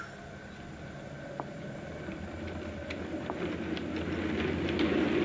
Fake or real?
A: real